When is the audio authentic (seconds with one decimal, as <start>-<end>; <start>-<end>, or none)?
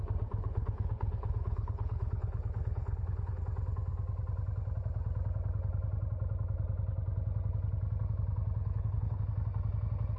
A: 0.0-0.4; 3.4-8.6; 9.2-10.2